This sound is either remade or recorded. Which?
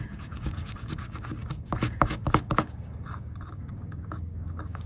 remade